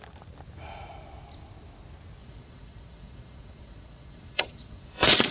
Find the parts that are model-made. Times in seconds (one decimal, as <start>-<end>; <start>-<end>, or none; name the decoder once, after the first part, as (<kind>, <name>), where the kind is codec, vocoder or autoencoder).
2.2-5.3 (vocoder, Vocos)